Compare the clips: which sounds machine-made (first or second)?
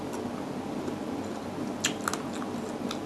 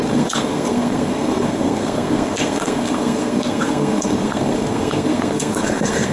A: second